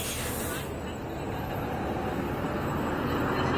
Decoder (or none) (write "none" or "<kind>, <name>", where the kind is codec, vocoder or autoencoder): none